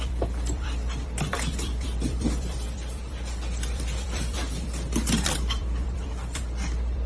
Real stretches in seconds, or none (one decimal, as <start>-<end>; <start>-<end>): none